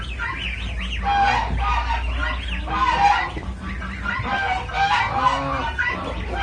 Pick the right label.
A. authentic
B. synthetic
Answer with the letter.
A